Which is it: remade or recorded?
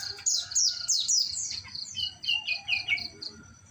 recorded